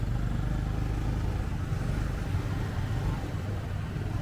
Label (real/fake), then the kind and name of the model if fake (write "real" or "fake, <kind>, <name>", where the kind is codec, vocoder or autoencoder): real